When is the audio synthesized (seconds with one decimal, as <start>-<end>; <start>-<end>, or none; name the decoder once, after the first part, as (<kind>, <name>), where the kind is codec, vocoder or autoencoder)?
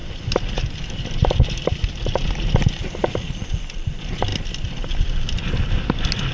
none